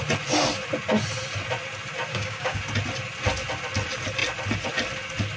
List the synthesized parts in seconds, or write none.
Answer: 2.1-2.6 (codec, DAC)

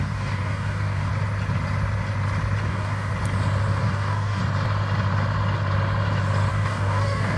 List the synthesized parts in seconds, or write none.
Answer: 0.0-1.1 (codec, DAC); 2.7-3.1; 3.8-4.4; 6.5-7.4

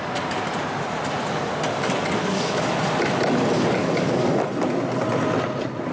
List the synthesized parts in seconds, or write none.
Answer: 2.2-2.7 (codec, DAC); 3.8-4.4

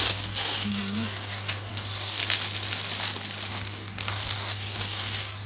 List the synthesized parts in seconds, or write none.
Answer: 0.0-2.2 (codec, DAC); 3.5-5.5